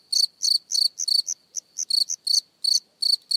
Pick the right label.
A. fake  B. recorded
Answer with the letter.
B